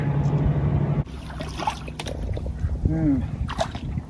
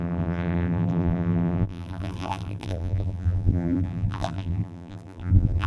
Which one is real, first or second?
first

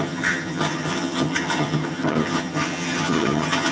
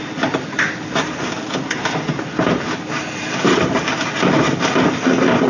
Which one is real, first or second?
second